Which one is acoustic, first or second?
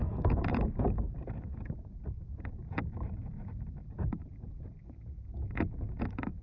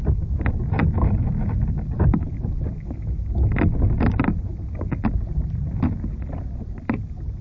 second